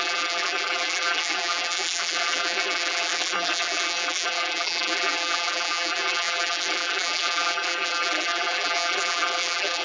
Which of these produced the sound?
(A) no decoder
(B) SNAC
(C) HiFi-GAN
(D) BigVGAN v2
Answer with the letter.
D